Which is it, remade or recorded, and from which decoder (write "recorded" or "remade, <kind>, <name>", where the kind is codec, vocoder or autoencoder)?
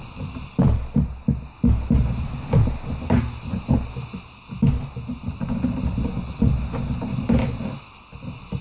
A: recorded